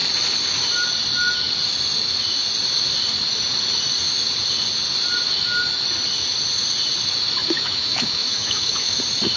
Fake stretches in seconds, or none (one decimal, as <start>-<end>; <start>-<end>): 7.4-9.0